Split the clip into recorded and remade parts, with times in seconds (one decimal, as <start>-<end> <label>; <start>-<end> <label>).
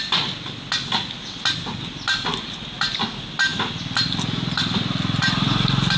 0.0-6.0 recorded